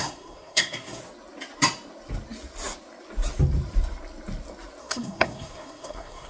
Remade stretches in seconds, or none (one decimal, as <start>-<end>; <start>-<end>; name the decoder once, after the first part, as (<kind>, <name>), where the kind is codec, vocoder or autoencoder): 0.0-1.0 (codec, SNAC); 4.8-6.3